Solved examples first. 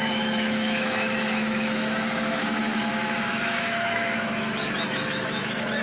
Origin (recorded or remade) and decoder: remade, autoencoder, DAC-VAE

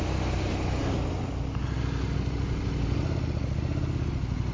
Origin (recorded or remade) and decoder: recorded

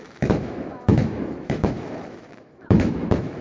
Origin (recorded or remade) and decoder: remade, autoencoder, DAC-VAE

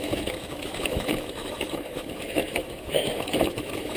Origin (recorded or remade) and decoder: remade, autoencoder, DAC-VAE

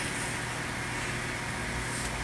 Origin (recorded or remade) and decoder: recorded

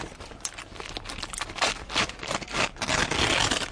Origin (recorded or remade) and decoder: recorded